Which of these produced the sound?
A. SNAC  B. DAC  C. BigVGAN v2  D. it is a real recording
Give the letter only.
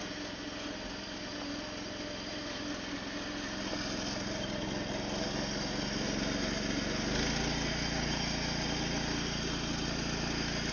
D